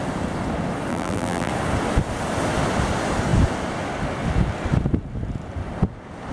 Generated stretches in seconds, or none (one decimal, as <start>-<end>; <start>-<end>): 0.9-1.5